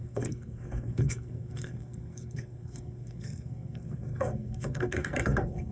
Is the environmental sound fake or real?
fake